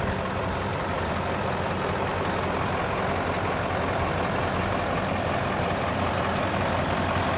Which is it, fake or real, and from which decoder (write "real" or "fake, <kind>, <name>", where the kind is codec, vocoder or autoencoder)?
real